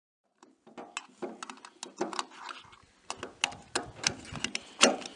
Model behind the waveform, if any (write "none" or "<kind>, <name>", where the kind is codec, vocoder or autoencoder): none